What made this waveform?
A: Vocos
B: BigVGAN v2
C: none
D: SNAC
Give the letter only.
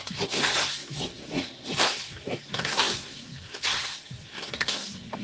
D